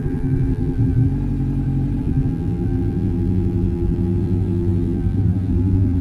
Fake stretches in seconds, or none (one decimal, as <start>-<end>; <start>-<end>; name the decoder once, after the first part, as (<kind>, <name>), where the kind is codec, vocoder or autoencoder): 0.0-1.1 (vocoder, BigVGAN v2); 2.0-6.0